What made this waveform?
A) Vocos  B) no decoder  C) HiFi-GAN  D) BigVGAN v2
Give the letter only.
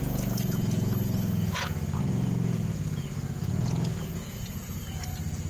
A